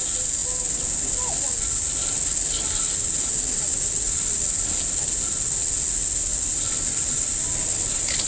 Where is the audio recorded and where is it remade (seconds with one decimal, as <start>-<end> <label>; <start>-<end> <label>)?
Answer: 0.0-8.3 recorded